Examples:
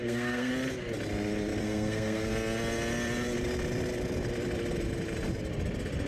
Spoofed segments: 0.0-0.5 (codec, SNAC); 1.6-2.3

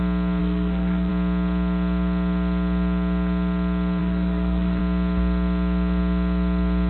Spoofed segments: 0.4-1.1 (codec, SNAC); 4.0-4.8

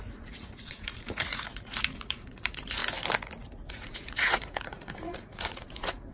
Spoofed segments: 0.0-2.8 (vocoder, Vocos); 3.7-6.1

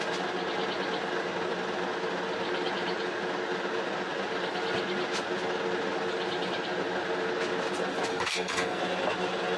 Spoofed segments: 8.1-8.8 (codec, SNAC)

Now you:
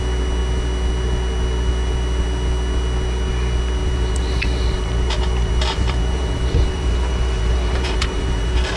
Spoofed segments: 3.8-8.8 (vocoder, BigVGAN v2)